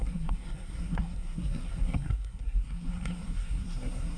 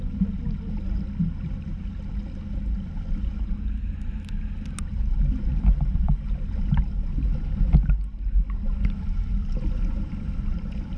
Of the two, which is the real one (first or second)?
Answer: second